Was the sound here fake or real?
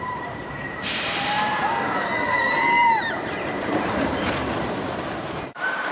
fake